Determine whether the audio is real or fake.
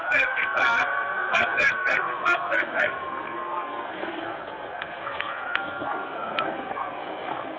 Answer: fake